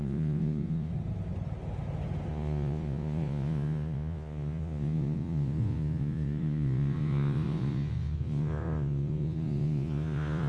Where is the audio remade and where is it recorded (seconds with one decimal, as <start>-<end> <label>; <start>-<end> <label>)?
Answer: 0.0-0.9 remade; 0.9-2.3 recorded; 2.3-10.5 remade